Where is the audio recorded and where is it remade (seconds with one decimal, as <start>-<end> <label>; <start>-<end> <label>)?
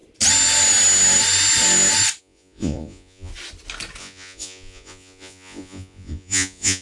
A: 0.0-2.2 recorded; 2.2-3.3 remade; 3.3-4.0 recorded; 4.0-6.8 remade